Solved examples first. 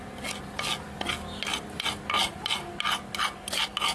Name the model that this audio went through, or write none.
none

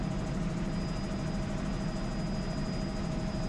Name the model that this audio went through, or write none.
none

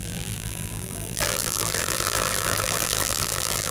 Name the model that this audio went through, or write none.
vocoder, BigVGAN v2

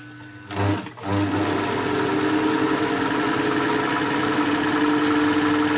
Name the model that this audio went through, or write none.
none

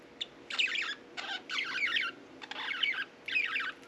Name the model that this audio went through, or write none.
none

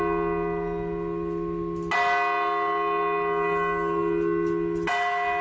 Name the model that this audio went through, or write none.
none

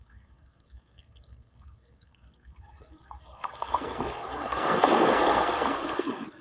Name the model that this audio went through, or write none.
codec, SNAC